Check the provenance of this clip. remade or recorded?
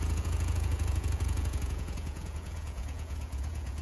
remade